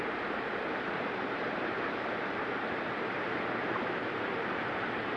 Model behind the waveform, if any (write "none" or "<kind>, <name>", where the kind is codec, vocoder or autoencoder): vocoder, BigVGAN v2